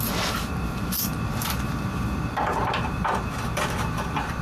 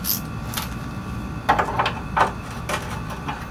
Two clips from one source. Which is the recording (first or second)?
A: second